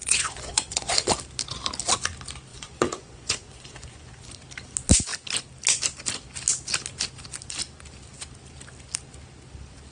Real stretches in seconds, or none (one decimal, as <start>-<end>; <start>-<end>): 1.1-2.5; 4.3-9.9